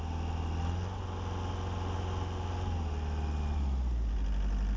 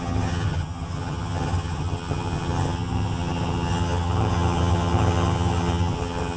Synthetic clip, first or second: second